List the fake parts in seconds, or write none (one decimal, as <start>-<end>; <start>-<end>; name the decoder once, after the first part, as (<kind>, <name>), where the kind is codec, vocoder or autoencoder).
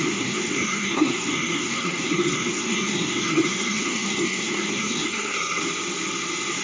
0.0-5.6 (codec, SNAC)